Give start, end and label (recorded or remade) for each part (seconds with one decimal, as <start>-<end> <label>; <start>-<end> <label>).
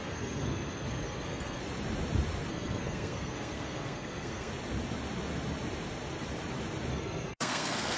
0.0-1.6 remade; 1.6-2.5 recorded; 2.5-4.5 remade; 4.5-6.9 recorded; 6.9-8.0 remade